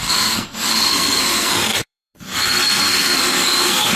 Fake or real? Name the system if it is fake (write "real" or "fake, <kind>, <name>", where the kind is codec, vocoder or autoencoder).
fake, codec, SNAC